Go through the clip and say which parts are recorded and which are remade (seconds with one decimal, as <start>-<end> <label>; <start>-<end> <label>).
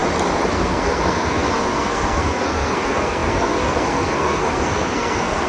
0.0-0.5 recorded; 0.5-5.5 remade